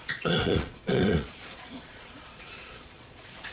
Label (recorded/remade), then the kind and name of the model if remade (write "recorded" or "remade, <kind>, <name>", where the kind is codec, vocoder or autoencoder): remade, vocoder, Vocos